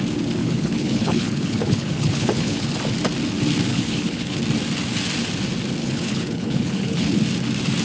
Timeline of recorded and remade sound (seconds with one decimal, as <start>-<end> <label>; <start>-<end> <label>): 0.0-0.4 recorded; 0.4-2.7 remade; 2.7-3.7 recorded; 3.7-4.4 remade; 4.4-5.8 recorded; 5.8-7.2 remade; 7.2-7.8 recorded